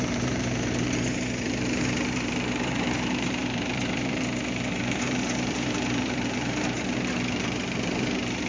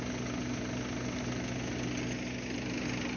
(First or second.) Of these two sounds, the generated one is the first